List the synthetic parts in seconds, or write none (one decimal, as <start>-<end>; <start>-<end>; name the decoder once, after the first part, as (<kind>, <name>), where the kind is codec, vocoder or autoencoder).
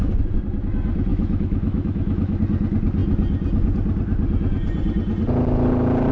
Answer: 1.1-2.4 (autoencoder, DAC-VAE)